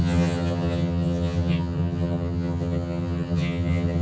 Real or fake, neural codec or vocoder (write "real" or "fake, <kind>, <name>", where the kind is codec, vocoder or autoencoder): fake, vocoder, HiFi-GAN